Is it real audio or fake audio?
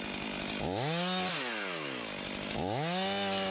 real